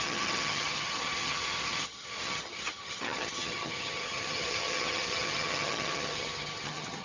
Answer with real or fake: fake